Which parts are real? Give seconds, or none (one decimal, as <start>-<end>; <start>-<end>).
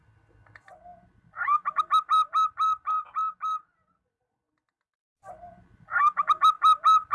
0.0-7.1